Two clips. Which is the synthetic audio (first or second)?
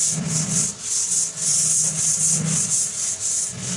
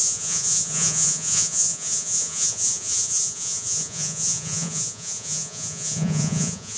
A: second